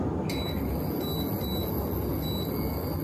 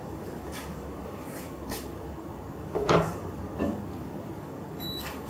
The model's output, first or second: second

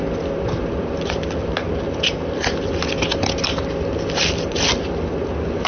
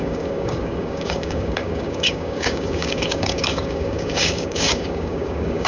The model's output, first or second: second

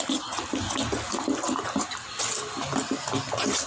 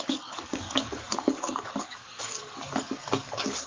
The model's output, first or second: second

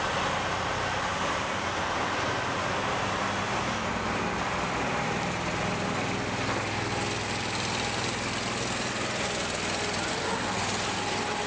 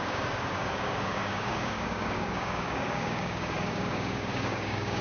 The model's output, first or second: second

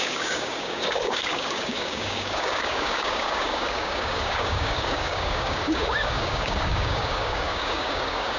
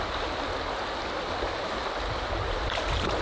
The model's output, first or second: first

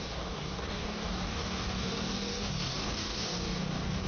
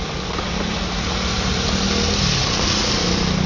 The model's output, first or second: first